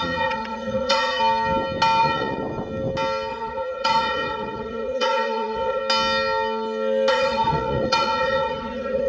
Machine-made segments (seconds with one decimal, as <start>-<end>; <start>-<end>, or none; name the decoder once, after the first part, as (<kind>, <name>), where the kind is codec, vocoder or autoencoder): 0.0-1.2 (vocoder, Vocos); 2.0-2.4; 3.3-5.8; 7.1-9.1